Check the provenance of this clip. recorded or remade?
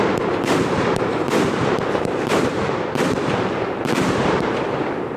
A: remade